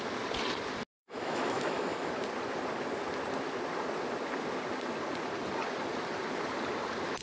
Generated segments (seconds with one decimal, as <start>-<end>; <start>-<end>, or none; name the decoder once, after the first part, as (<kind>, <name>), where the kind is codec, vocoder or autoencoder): 1.0-2.1 (autoencoder, DAC-VAE)